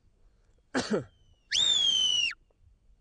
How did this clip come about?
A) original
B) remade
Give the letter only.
B